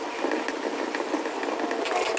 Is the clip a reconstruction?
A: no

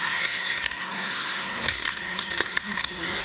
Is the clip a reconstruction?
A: yes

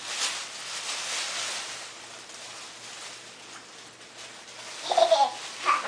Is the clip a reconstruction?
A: no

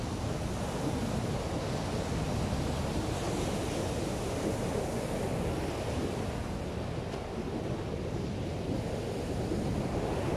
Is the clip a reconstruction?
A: no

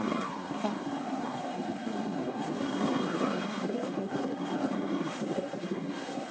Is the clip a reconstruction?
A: yes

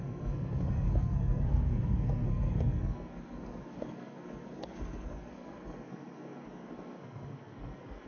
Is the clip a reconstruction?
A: yes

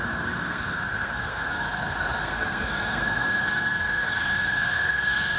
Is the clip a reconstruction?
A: yes